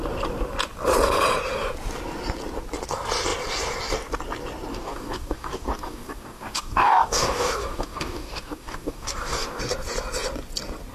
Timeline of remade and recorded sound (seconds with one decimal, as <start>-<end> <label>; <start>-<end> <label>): 0.0-4.7 recorded; 4.7-9.6 remade; 9.6-10.9 recorded